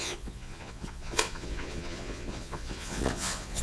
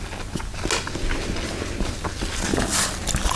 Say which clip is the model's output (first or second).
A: first